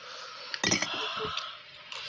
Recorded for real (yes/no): yes